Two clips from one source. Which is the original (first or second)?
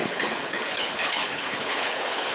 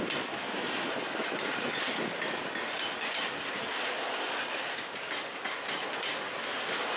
second